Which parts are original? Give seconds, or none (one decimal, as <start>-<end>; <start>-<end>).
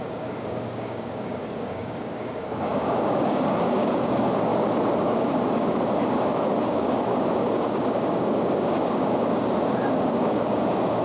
4.5-5.0